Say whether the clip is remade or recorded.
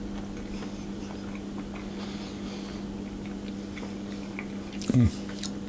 recorded